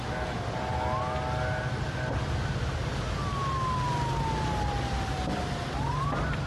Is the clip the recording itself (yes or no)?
yes